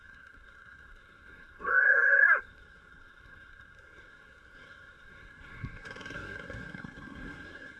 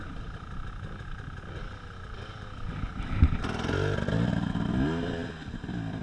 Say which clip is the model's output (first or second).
first